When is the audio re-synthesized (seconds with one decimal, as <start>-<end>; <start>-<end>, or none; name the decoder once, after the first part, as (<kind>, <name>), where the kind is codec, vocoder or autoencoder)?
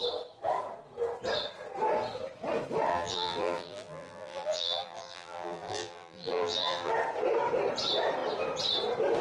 2.9-6.9 (vocoder, BigVGAN v2)